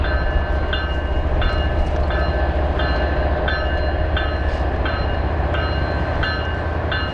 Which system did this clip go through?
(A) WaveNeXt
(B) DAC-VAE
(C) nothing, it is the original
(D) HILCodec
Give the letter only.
C